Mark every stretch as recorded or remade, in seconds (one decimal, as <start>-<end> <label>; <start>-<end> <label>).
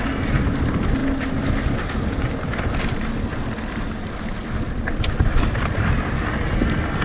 0.0-7.0 recorded